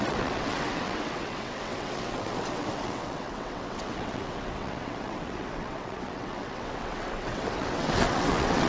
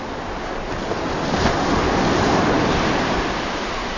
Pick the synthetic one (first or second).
first